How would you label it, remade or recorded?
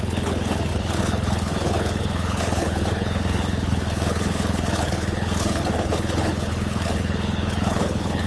remade